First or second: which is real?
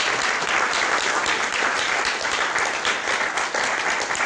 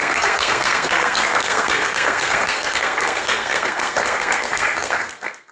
first